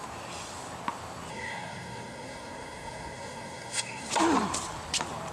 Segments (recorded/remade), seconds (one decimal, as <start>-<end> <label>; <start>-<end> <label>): 0.0-1.3 recorded; 1.3-4.1 remade; 4.1-5.3 recorded